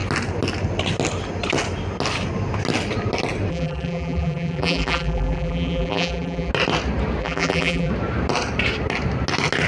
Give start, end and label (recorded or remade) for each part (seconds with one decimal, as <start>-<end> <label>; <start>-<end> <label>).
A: 0.0-3.5 recorded; 3.5-6.5 remade; 6.5-7.2 recorded; 7.2-7.9 remade; 7.9-9.7 recorded